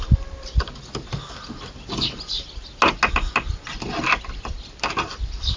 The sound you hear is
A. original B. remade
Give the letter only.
A